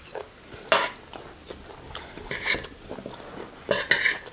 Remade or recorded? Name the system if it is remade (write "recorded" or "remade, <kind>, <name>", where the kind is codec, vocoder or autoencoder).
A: recorded